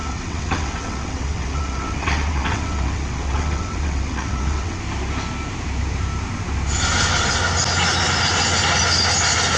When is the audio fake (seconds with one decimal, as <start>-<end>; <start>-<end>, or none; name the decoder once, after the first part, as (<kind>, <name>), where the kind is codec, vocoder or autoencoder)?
0.0-4.8 (vocoder, WaveNeXt)

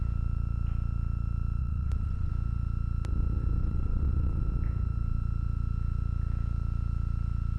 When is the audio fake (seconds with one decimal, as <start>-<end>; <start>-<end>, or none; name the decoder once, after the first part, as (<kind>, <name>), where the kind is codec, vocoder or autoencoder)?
1.6-2.3 (vocoder, WaveNeXt); 3.6-4.4

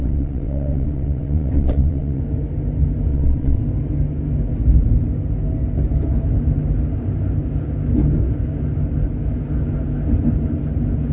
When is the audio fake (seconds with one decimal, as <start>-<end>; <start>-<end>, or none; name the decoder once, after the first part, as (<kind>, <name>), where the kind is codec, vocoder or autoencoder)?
0.0-2.2 (vocoder, WaveNeXt); 3.1-3.6